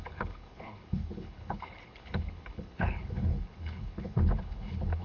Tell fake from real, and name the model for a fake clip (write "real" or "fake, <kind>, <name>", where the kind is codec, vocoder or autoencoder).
fake, codec, HILCodec